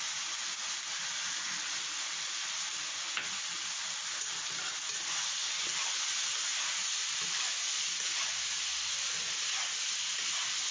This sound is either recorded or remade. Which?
recorded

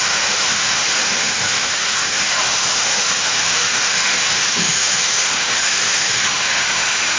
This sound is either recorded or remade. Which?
remade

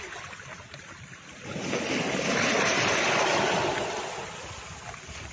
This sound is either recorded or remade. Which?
recorded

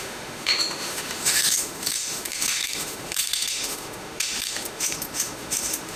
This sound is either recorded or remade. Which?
remade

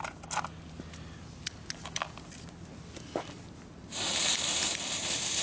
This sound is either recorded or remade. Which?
recorded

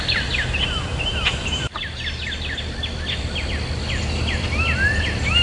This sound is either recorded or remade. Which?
recorded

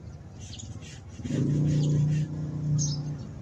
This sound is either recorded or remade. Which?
recorded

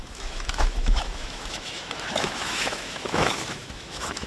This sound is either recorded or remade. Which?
remade